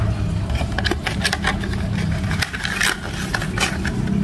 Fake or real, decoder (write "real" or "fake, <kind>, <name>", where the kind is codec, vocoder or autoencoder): real